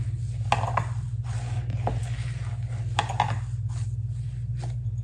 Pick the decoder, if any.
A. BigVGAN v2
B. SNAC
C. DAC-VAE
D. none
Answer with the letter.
D